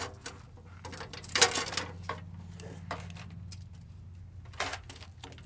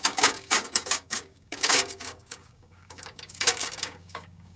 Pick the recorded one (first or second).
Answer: first